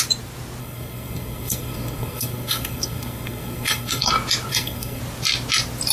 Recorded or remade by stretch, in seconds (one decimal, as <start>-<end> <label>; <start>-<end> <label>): 0.0-0.6 recorded; 0.6-4.1 remade; 4.1-4.5 recorded; 4.5-5.0 remade; 5.0-5.9 recorded